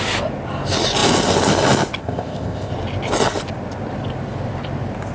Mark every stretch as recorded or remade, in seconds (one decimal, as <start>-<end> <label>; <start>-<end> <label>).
0.0-2.0 recorded; 2.0-2.7 remade; 2.7-5.1 recorded